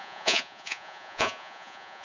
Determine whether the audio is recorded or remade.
remade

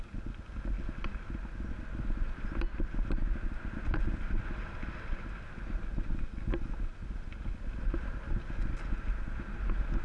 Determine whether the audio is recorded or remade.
recorded